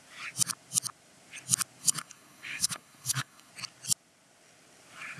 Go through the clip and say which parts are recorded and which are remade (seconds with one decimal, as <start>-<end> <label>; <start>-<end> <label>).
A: 0.0-1.8 recorded; 1.8-3.5 remade; 3.5-5.2 recorded